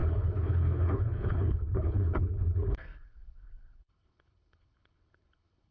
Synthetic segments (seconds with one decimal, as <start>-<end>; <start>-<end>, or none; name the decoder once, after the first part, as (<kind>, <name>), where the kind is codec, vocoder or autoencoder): 0.0-5.7 (codec, HILCodec)